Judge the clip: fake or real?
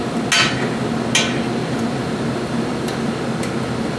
real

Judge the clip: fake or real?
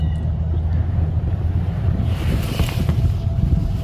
real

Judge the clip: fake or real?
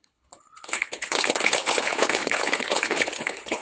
fake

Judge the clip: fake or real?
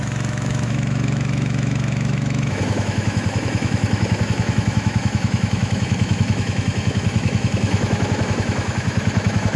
fake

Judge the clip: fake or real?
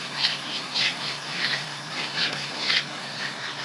fake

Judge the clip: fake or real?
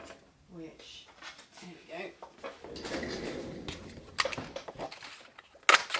real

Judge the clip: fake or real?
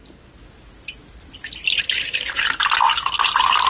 real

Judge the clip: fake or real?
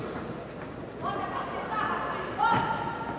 real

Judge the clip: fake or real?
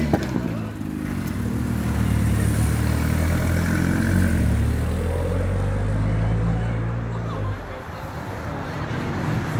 real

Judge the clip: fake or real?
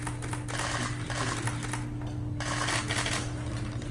real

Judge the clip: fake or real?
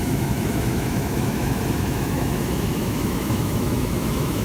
fake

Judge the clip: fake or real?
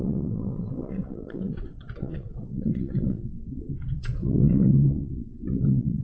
fake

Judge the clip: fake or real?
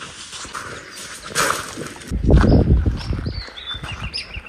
real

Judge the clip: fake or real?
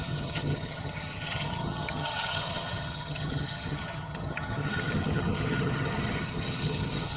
fake